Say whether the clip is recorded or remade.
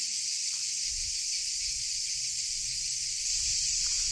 remade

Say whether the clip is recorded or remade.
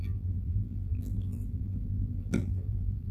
remade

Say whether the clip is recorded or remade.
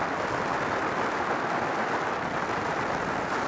recorded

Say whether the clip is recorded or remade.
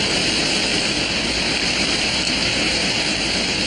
remade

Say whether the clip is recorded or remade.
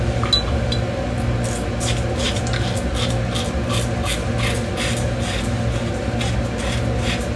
recorded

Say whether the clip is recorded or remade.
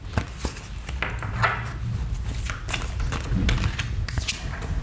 recorded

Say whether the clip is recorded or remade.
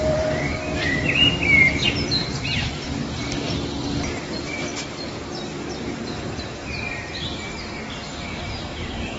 remade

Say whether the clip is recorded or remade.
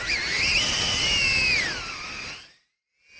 recorded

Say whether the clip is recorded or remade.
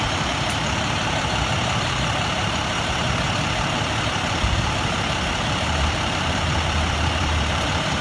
remade